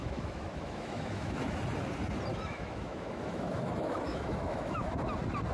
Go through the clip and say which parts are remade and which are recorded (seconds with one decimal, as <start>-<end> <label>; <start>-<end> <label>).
0.0-1.6 remade; 1.6-2.3 recorded; 2.3-4.9 remade; 4.9-5.5 recorded